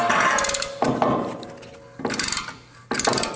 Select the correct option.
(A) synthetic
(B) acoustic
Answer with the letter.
B